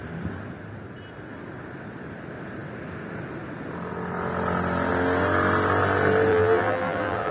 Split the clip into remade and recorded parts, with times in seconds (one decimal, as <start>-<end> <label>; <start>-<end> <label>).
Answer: 0.0-6.3 recorded; 6.3-7.3 remade